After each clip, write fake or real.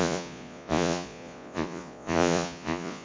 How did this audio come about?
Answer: fake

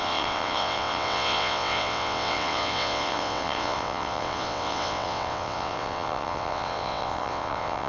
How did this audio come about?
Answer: fake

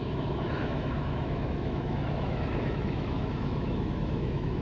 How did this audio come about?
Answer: fake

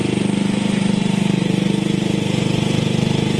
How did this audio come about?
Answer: fake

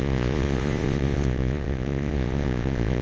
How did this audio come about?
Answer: fake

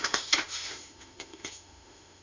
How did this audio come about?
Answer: fake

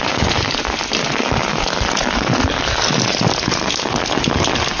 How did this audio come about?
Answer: real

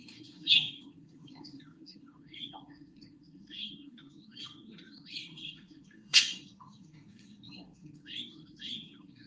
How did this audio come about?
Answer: fake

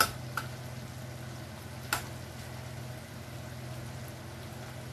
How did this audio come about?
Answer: real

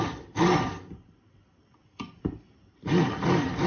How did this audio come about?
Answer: fake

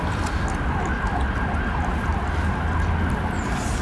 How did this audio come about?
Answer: real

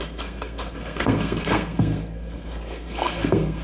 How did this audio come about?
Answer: fake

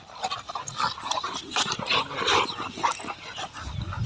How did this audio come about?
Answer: real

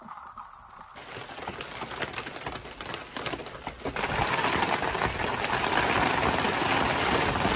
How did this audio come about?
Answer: real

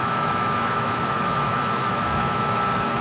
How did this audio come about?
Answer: fake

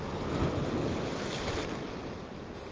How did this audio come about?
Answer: real